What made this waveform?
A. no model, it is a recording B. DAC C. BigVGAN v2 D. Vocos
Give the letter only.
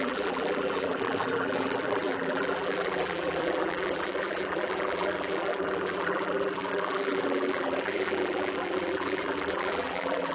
C